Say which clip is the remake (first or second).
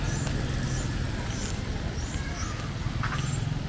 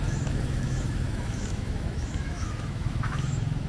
second